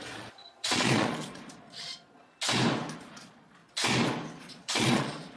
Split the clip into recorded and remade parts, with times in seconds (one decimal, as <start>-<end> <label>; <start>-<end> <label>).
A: 0.0-2.3 remade; 2.3-3.0 recorded; 3.0-3.6 remade; 3.6-4.4 recorded; 4.4-5.4 remade